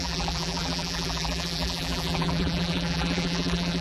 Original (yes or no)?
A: no